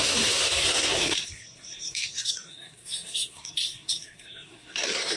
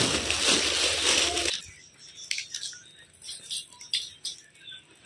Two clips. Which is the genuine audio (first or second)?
second